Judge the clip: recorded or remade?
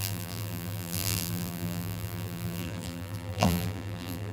remade